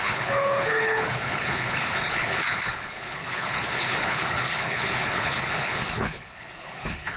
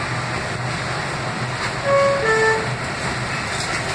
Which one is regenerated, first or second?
first